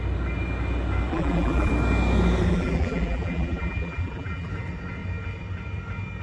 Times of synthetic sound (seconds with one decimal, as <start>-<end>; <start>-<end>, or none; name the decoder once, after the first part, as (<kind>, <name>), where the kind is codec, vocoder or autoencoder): 1.1-1.7 (vocoder, BigVGAN v2); 2.5-4.5